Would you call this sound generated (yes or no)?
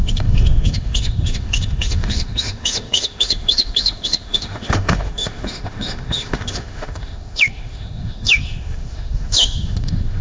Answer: yes